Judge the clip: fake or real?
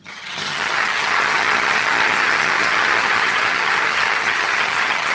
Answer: fake